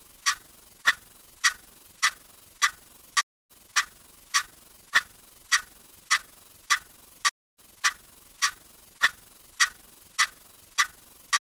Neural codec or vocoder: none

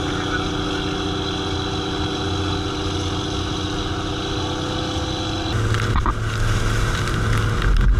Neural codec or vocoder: none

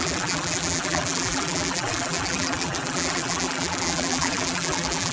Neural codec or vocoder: vocoder, BigVGAN v2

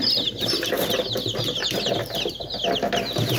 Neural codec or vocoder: none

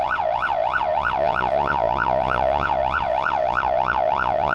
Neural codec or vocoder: vocoder, Vocos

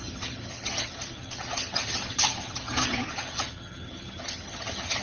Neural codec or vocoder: vocoder, HiFi-GAN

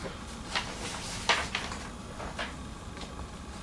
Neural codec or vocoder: none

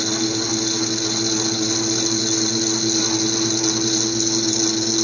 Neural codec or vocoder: none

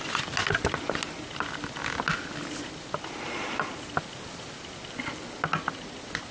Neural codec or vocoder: none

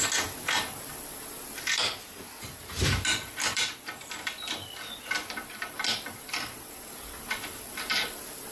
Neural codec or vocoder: vocoder, BigVGAN v2